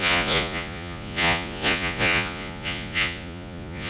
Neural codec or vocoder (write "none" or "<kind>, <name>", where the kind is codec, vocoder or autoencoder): vocoder, Vocos